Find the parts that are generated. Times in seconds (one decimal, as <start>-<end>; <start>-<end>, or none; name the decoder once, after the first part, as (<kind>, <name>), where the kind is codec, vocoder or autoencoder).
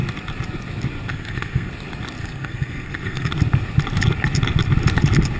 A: 1.1-1.7 (codec, SNAC); 2.2-3.3